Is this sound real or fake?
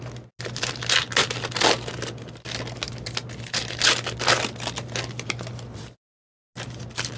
real